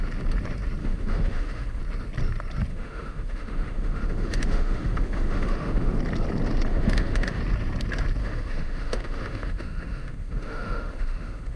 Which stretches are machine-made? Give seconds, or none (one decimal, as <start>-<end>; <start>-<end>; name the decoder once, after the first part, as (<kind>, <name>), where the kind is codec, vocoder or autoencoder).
0.8-1.8 (autoencoder, DAC-VAE); 2.7-6.0; 6.7-7.4; 8.2-11.6

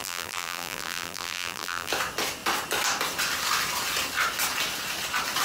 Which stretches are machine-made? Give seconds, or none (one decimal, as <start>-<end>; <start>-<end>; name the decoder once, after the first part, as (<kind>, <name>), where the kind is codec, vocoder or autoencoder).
0.0-1.9 (vocoder, BigVGAN v2)

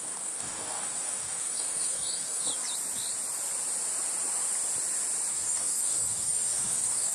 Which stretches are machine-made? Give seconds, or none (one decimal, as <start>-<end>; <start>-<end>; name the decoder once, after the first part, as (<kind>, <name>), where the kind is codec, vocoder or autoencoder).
0.0-2.5 (codec, DAC); 5.3-7.1

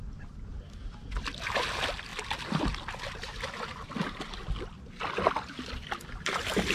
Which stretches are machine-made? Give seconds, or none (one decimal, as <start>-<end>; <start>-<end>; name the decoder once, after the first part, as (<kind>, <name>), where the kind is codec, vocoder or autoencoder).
none

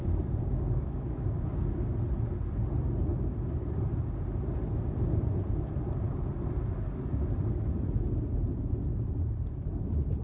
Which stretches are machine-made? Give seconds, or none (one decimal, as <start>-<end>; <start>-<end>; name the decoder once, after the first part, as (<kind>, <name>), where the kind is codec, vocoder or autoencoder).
0.0-1.9 (codec, DAC)